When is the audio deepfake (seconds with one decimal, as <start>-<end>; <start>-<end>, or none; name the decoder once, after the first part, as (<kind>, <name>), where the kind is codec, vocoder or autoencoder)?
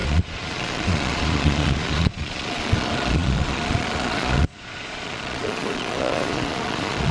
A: 0.0-7.1 (vocoder, Vocos)